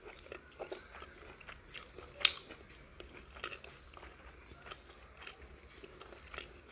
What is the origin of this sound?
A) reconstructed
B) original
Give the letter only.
B